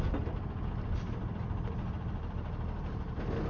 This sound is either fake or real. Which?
real